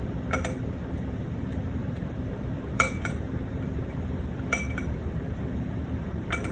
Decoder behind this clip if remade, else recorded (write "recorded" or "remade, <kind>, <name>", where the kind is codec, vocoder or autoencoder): remade, vocoder, BigVGAN v2